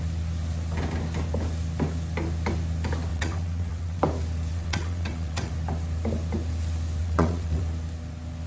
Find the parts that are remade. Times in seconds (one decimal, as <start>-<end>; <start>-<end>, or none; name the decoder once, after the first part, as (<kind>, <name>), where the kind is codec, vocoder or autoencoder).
3.1-4.0 (vocoder, WaveNeXt); 4.5-5.5; 7.0-7.6